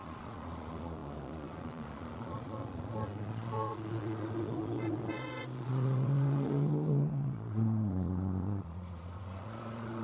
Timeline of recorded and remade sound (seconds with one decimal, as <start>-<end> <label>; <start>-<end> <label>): 0.0-10.0 remade